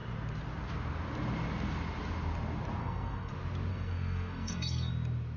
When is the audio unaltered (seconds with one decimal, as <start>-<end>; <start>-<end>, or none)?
0.0-2.8; 3.3-3.7; 4.9-5.4

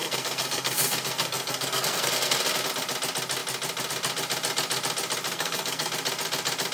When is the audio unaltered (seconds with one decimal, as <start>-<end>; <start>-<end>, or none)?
2.4-5.3; 5.9-6.7

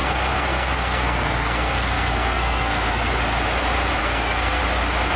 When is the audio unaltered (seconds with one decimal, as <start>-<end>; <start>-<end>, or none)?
3.1-4.0; 4.6-5.2

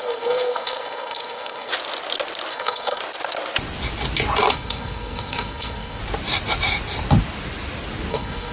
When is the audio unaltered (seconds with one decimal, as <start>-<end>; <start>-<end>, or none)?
1.7-2.5; 3.0-4.5; 6.0-8.1

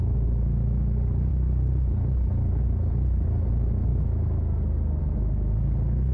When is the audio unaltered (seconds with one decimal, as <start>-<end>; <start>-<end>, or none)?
0.0-6.1

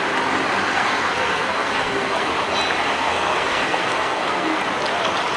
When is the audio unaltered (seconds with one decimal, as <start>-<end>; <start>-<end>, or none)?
0.0-0.7; 2.3-2.9; 4.6-5.4

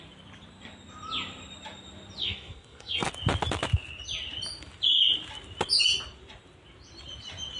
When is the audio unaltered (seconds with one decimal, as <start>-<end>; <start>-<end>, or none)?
0.0-2.2; 3.1-7.6

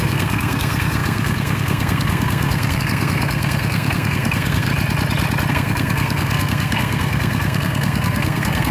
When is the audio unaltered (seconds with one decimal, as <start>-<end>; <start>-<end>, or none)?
4.7-5.5